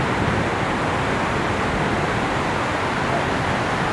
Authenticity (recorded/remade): recorded